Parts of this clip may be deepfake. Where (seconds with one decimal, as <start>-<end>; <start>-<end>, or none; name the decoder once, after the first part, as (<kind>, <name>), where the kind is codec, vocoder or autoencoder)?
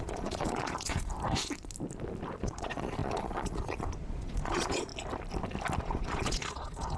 0.0-1.1 (vocoder, Vocos); 2.4-4.9; 5.8-7.0